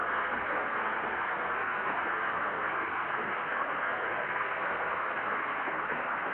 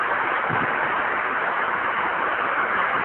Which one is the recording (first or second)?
second